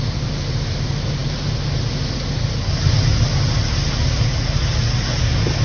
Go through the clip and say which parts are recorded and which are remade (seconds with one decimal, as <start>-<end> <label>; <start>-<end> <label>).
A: 0.0-5.6 recorded